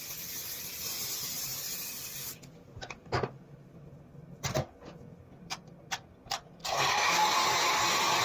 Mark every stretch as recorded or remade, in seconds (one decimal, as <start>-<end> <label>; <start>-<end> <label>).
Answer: 0.0-6.6 recorded; 6.6-7.1 remade; 7.1-8.2 recorded